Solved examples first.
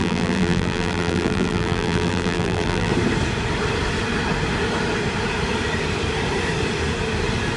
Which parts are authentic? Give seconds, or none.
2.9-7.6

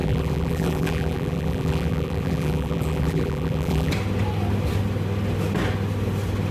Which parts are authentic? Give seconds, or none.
3.9-6.5